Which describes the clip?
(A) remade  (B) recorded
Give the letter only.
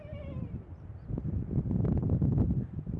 B